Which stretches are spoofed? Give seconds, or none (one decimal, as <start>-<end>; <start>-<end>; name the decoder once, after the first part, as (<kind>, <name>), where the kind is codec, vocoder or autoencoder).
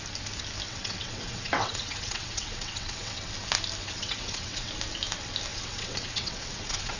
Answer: 0.7-3.3 (vocoder, WaveNeXt); 3.8-4.7; 5.5-7.0